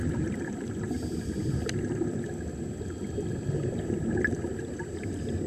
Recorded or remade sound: recorded